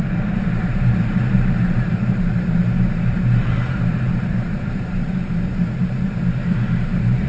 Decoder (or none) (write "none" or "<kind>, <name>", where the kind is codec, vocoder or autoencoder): vocoder, BigVGAN v2